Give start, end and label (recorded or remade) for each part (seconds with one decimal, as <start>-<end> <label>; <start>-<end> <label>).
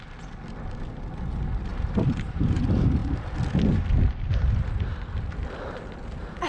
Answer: 0.0-1.7 recorded; 1.7-2.6 remade; 2.6-6.5 recorded